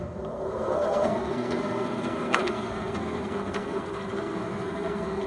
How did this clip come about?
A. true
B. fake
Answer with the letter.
B